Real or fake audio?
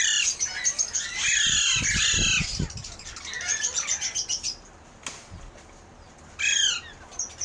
real